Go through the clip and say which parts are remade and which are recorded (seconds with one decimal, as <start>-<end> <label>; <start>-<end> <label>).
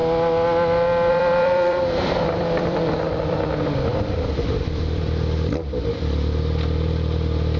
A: 0.0-1.1 recorded; 1.1-7.6 remade